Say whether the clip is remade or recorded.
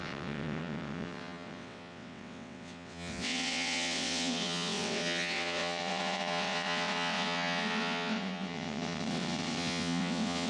remade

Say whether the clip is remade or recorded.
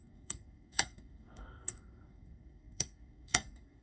remade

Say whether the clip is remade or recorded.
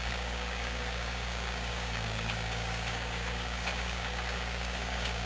remade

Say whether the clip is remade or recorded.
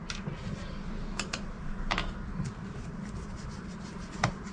recorded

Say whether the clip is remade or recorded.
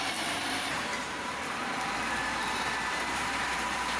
remade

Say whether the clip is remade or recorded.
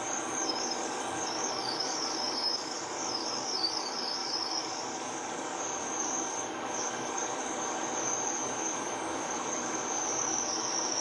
remade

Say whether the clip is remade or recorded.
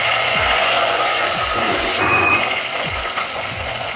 remade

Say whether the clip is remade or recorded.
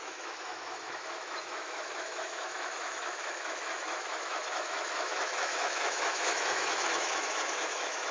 remade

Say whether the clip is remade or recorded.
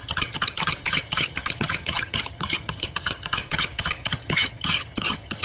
remade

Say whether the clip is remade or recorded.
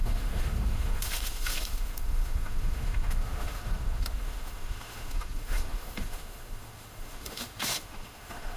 remade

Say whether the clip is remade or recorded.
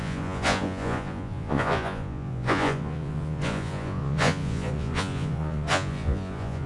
remade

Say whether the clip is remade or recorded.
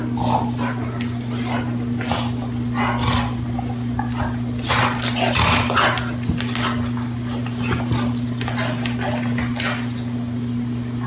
recorded